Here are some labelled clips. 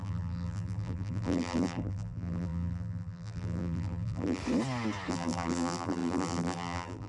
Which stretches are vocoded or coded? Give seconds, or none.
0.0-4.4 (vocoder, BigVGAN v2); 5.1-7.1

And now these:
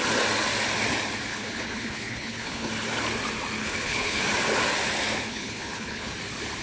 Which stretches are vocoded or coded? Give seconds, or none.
1.3-2.7 (codec, HILCodec); 3.6-4.2; 5.3-6.1

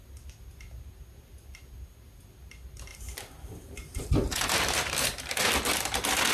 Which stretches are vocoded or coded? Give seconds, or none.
2.9-5.5 (vocoder, BigVGAN v2)

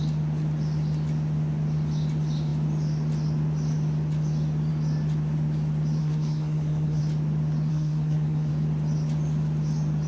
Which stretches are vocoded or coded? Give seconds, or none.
6.0-7.0 (codec, SNAC); 7.7-8.5

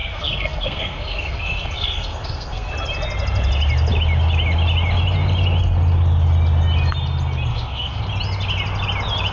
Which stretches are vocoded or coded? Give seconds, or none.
0.0-2.7 (codec, SNAC); 7.5-8.0